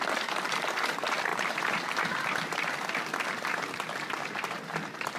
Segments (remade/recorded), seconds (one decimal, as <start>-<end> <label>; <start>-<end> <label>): 0.0-1.3 recorded; 1.3-1.8 remade; 1.8-5.2 recorded